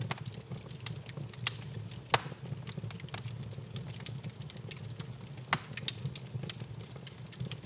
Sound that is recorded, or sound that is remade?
recorded